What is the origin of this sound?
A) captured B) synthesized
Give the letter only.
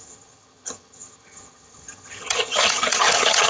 B